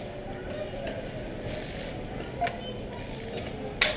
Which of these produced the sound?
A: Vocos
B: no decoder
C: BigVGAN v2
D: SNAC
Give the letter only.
B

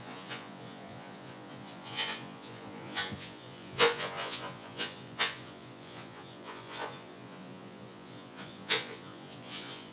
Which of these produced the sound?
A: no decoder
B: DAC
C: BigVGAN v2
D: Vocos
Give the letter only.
D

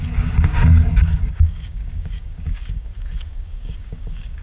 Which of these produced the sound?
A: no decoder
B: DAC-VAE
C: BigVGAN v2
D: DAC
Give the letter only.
D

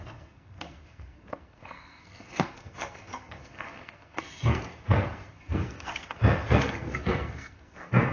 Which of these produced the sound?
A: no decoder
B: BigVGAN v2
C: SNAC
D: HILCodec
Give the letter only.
C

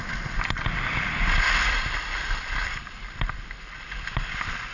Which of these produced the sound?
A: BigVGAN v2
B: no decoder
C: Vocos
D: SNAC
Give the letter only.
B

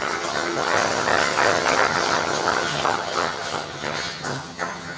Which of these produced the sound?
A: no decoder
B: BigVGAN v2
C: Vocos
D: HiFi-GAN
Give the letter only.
D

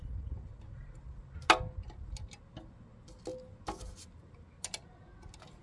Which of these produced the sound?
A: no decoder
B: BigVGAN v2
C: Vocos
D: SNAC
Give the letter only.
A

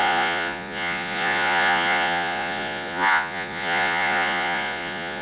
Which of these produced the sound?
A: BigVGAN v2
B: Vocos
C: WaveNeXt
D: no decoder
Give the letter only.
B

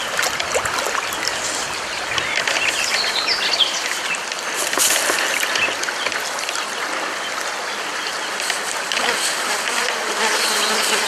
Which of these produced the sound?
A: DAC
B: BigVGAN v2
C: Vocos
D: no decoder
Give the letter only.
D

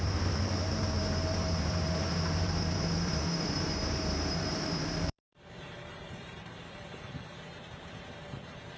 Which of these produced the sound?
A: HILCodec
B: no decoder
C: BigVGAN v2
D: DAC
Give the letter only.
C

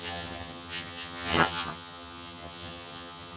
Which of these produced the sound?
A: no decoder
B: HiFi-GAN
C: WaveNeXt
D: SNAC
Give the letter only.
B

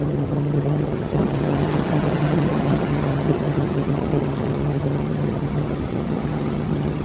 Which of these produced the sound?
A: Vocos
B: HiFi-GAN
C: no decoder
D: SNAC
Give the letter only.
B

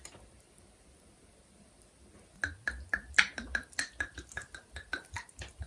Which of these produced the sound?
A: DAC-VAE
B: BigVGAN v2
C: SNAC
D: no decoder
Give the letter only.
D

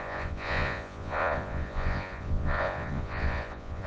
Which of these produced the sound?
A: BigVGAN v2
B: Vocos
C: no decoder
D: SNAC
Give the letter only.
B